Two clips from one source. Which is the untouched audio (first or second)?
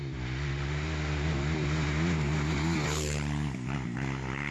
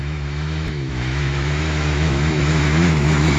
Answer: first